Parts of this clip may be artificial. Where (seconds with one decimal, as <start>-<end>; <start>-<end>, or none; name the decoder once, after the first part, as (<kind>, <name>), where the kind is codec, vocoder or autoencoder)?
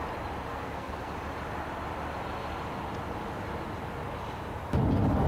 0.5-1.1 (codec, SNAC)